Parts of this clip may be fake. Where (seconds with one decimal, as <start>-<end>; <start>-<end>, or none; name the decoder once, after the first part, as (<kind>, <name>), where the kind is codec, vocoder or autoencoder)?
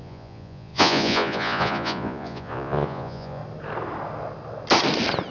0.0-3.4 (vocoder, Vocos)